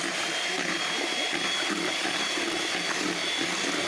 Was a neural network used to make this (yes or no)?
yes